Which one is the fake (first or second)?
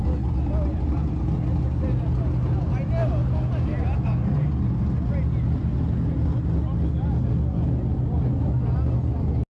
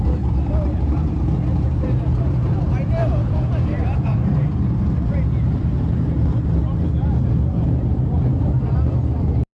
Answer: second